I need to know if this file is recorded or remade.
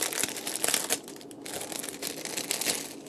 recorded